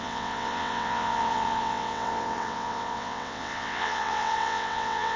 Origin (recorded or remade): remade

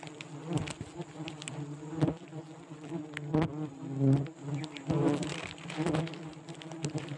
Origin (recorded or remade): recorded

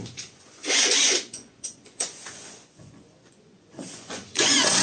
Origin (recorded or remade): remade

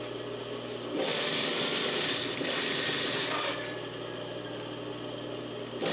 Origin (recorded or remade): recorded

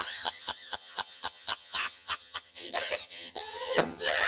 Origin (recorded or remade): remade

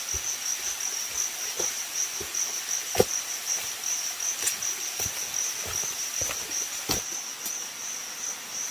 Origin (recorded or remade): recorded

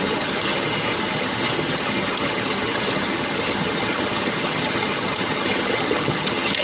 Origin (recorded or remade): remade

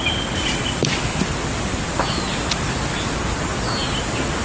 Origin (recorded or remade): recorded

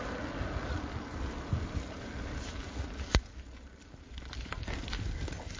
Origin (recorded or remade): recorded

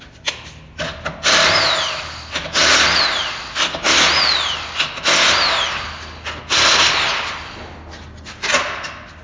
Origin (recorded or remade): recorded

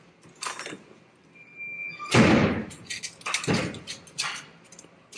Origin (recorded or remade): recorded